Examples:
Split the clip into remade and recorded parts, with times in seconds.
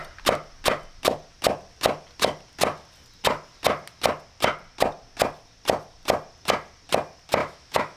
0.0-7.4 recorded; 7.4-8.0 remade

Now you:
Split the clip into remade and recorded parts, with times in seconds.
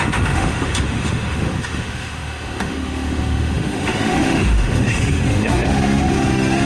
0.0-6.7 remade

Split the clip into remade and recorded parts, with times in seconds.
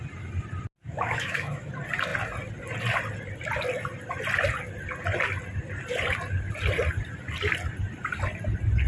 0.0-0.8 recorded; 0.8-1.7 remade; 1.7-8.9 recorded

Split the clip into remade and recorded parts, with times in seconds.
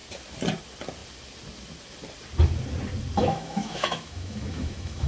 0.0-3.2 recorded; 3.2-5.1 remade